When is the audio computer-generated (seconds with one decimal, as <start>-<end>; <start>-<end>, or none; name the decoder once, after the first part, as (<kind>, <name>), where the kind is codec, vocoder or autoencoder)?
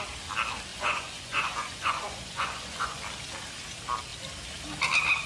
0.7-3.0 (vocoder, Vocos)